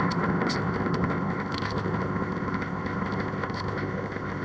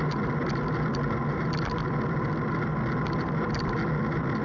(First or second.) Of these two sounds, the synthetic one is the first